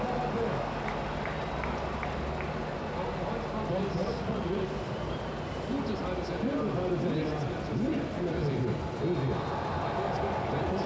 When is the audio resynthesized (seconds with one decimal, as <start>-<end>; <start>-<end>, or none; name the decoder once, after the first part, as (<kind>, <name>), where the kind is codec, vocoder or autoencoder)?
4.0-4.6 (vocoder, Vocos)